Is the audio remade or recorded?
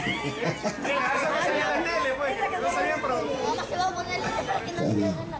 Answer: recorded